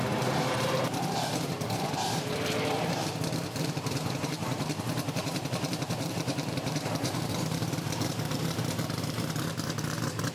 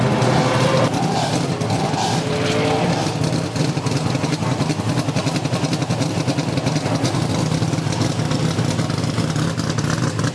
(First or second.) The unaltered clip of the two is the second